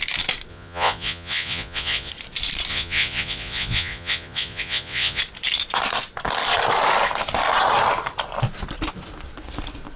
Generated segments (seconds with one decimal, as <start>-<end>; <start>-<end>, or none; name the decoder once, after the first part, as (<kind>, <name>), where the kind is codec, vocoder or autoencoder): 0.5-2.1 (vocoder, Vocos); 2.7-5.2